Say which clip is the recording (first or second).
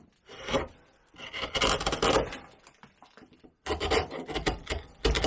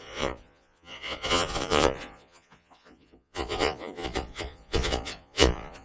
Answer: first